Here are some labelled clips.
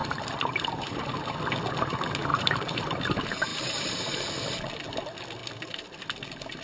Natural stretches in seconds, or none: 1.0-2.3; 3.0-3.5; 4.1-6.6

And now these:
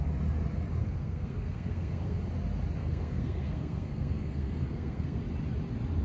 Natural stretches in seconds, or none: 0.0-0.8; 2.2-2.8; 5.2-6.0

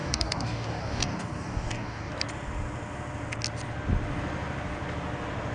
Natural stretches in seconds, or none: 2.1-5.5

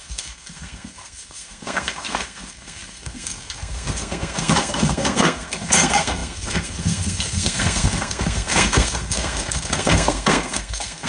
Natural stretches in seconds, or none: none

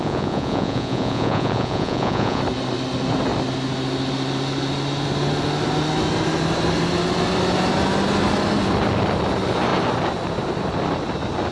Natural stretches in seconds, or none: 2.4-11.5